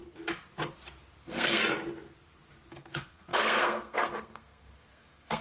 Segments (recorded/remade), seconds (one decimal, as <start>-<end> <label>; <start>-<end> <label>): 0.0-1.2 recorded; 1.2-1.6 remade; 1.6-2.7 recorded; 2.7-5.4 remade